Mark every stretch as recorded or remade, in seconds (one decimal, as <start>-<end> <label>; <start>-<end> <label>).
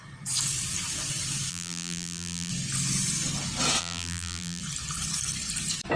0.0-1.5 recorded; 1.5-2.5 remade; 2.5-3.8 recorded; 3.8-4.6 remade; 4.6-6.0 recorded